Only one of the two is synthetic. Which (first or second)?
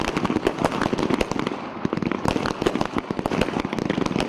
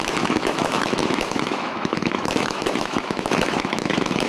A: second